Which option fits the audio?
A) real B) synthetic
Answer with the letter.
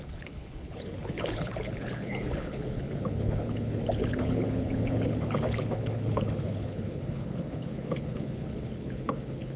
B